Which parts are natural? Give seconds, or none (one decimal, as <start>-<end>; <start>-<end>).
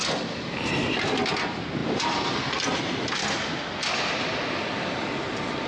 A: 0.0-5.7